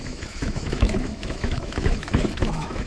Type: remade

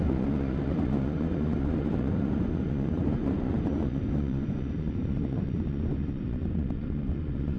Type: remade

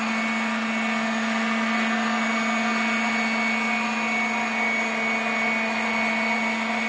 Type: recorded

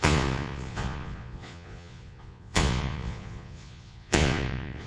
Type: remade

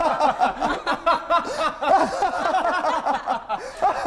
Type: recorded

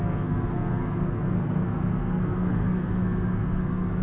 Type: remade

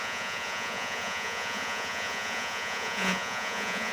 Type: remade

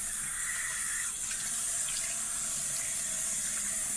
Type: recorded